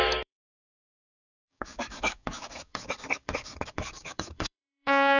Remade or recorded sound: remade